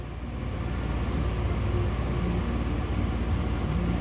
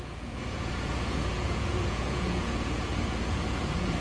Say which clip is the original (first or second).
first